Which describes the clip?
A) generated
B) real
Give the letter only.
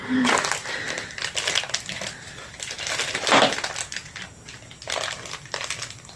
B